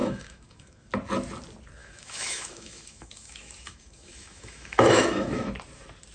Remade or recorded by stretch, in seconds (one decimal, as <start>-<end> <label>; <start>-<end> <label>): 0.0-0.9 remade; 0.9-1.8 recorded; 1.8-5.5 remade; 5.5-6.1 recorded